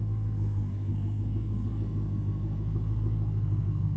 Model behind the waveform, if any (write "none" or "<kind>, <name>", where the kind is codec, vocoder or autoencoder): codec, SNAC